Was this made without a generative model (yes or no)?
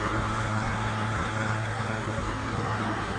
no